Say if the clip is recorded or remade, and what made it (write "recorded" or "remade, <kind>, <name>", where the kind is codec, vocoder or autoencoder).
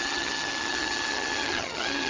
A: remade, vocoder, HiFi-GAN